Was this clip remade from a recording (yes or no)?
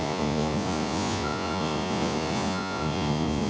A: yes